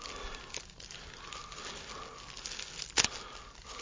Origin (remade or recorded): recorded